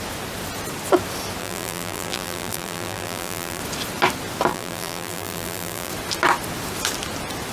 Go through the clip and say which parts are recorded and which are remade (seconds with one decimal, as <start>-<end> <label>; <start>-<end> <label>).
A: 0.0-1.4 recorded; 1.4-3.6 remade; 3.6-4.5 recorded; 4.5-5.9 remade; 5.9-7.5 recorded